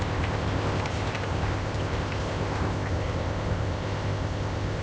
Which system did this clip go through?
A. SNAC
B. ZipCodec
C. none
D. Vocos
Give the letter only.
B